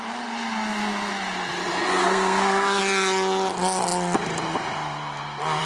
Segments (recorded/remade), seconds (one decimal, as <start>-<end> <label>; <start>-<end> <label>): 0.0-2.0 recorded; 2.0-2.8 remade; 2.8-5.6 recorded